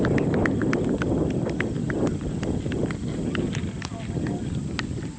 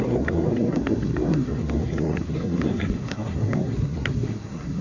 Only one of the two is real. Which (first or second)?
first